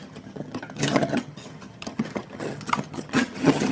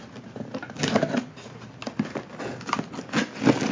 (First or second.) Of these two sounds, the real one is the second